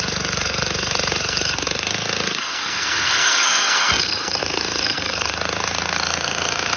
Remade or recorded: remade